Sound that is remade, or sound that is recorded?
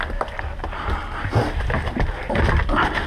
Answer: recorded